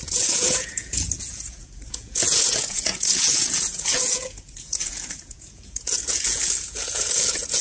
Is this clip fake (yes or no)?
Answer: yes